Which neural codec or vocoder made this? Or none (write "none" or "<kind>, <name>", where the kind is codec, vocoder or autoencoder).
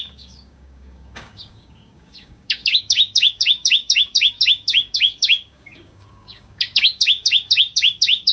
codec, DAC